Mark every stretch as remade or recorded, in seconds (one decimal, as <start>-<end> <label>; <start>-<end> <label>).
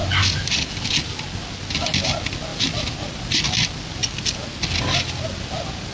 0.0-5.9 recorded